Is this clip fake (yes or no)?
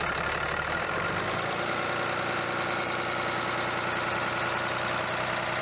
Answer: no